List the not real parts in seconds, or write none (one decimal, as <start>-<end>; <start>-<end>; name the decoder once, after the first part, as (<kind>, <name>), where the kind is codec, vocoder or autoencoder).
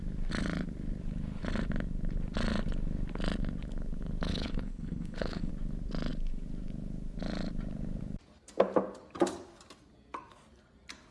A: 4.3-5.5 (codec, HILCodec)